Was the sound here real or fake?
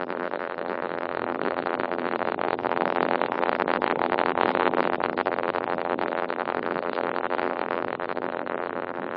fake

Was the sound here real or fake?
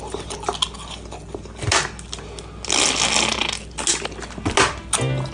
real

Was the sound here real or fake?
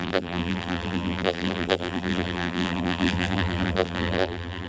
fake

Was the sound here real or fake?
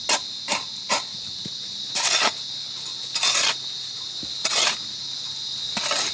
real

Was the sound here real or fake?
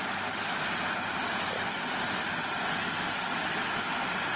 real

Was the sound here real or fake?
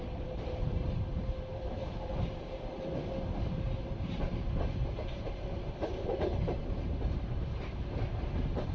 fake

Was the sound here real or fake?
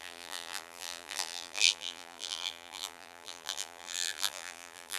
fake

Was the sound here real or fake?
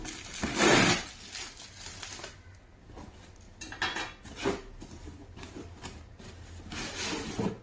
real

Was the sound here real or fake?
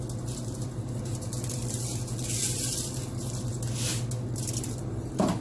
real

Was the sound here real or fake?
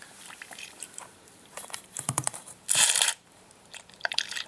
fake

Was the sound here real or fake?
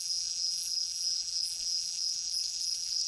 fake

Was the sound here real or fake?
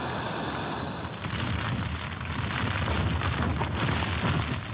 real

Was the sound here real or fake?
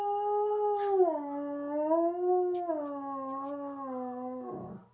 real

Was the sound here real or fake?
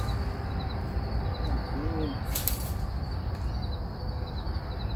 real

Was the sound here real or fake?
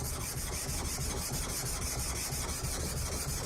real